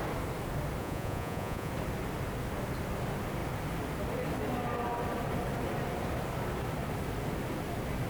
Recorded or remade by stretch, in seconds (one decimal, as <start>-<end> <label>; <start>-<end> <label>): 0.0-0.8 recorded; 0.8-1.7 remade; 1.7-8.1 recorded